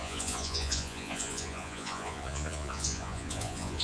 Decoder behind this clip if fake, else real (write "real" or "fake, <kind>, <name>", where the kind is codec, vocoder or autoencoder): fake, vocoder, Vocos